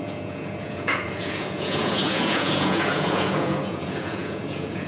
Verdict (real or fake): fake